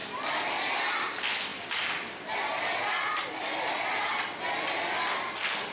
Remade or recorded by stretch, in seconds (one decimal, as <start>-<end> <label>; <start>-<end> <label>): 0.0-5.7 recorded

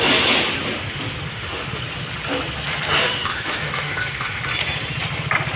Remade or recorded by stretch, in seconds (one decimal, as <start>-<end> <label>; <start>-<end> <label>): 0.0-1.3 recorded; 1.3-1.8 remade; 1.8-3.0 recorded; 3.0-4.4 remade; 4.4-5.6 recorded

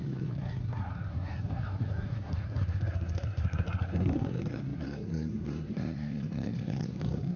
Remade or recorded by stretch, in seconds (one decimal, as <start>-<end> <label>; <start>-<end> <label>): 0.0-7.4 remade